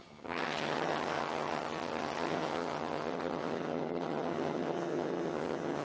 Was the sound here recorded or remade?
remade